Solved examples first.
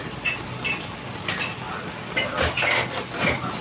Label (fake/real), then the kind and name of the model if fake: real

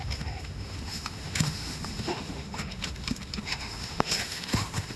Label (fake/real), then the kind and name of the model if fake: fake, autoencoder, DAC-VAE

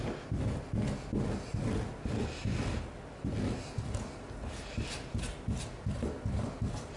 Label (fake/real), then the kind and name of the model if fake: real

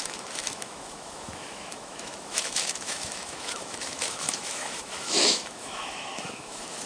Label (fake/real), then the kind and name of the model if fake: fake, autoencoder, DAC-VAE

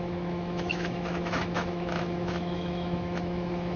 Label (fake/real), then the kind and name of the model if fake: fake, autoencoder, DAC-VAE